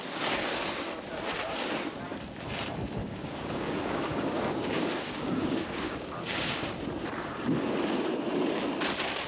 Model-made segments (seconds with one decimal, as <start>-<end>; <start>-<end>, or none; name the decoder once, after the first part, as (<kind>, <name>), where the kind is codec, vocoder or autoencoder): 3.0-6.6 (codec, DAC)